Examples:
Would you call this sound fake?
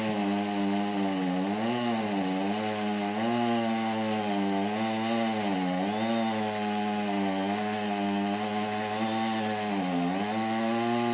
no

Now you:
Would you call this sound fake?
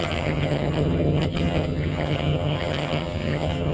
yes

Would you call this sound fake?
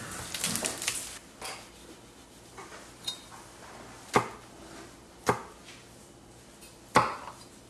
no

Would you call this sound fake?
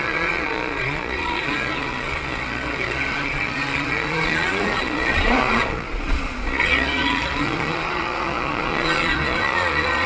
yes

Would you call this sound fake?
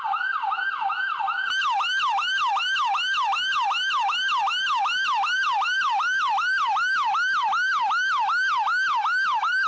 no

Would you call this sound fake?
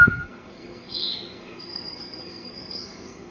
yes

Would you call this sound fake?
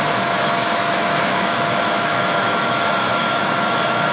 yes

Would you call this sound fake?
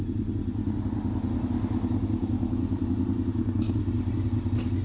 no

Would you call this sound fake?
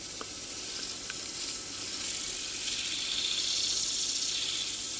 no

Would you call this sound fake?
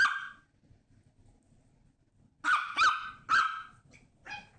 no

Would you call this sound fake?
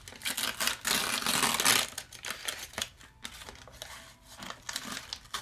no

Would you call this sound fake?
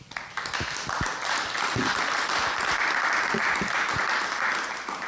no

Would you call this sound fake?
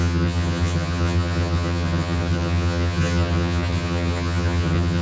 yes